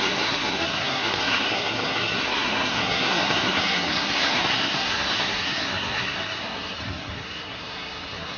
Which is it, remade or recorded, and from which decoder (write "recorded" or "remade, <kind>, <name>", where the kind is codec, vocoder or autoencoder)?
remade, codec, SNAC